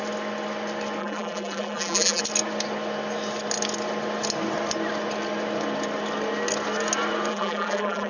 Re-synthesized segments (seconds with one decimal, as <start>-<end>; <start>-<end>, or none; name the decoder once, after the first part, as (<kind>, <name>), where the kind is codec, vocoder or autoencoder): 1.0-2.2 (vocoder, BigVGAN v2); 7.3-8.1